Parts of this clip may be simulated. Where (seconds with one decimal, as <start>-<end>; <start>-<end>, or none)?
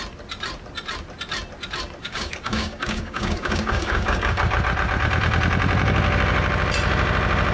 2.0-4.4